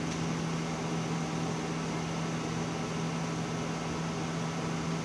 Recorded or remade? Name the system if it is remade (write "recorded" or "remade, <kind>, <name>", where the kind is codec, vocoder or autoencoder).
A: recorded